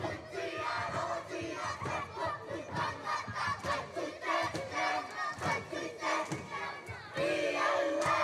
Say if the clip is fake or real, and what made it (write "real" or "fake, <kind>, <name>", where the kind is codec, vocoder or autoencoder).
real